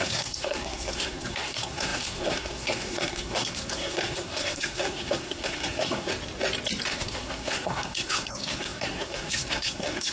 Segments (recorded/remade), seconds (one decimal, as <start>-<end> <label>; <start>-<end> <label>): 0.0-6.1 remade; 6.1-6.9 recorded; 6.9-10.1 remade